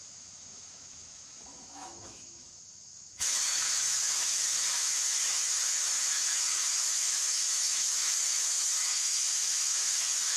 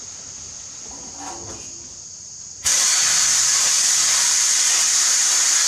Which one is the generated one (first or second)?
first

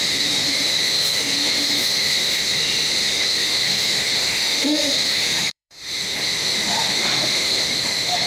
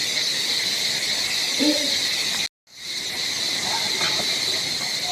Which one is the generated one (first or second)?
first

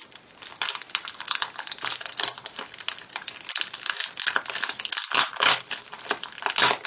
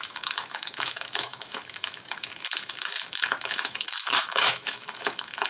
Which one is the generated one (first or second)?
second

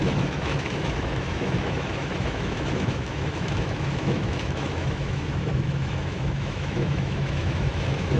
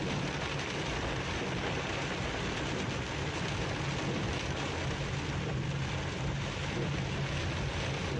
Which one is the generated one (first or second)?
first